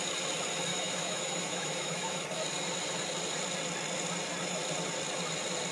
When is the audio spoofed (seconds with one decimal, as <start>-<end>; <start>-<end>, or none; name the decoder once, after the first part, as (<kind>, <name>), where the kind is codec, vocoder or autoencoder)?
0.7-2.2 (autoencoder, DAC-VAE)